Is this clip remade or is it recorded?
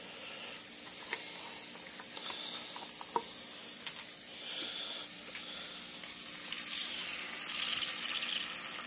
recorded